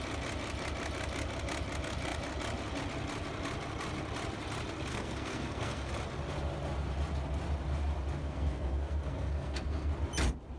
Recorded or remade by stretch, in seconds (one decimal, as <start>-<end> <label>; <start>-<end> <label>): 0.0-4.9 recorded; 4.9-5.9 remade; 5.9-8.2 recorded; 8.2-9.9 remade; 9.9-10.6 recorded